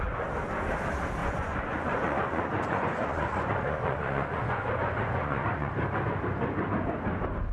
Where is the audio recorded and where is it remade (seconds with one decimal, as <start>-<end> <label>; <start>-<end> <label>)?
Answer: 0.0-1.2 recorded; 1.2-5.7 remade; 5.7-7.5 recorded